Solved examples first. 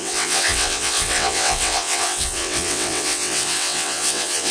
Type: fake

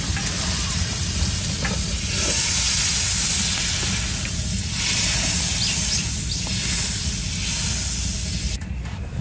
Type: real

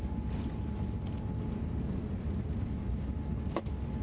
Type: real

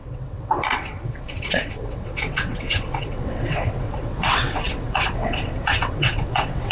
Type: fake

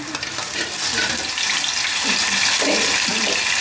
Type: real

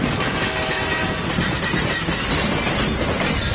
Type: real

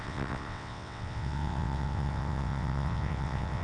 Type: fake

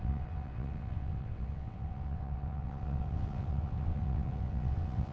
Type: fake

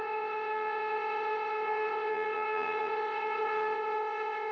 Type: fake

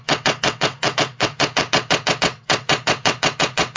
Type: fake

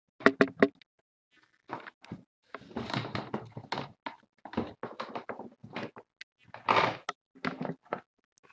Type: real